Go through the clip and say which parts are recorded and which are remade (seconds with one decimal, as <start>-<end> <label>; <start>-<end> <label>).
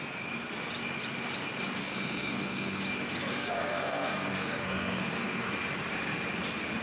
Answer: 0.0-1.8 recorded; 1.8-2.8 remade; 2.8-3.3 recorded; 3.3-5.5 remade; 5.5-6.8 recorded